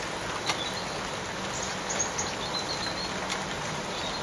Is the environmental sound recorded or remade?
recorded